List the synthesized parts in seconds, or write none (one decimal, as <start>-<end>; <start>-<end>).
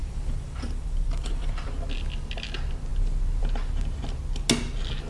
0.0-1.5